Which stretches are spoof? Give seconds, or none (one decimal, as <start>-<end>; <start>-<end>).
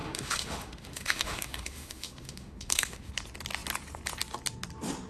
0.0-3.1